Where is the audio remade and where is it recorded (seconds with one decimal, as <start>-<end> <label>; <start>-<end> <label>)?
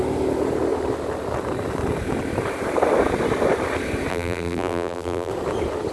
0.0-4.1 recorded; 4.1-5.3 remade; 5.3-5.9 recorded